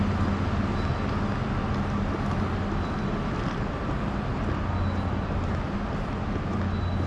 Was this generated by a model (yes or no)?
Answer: no